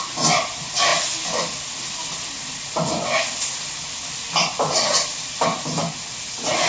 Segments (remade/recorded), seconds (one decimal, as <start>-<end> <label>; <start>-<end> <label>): 0.0-6.7 recorded